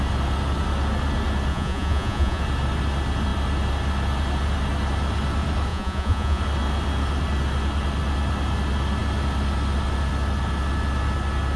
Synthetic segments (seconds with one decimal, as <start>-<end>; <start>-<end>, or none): 1.5-2.4; 5.7-6.4